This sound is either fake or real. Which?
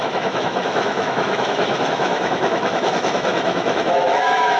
fake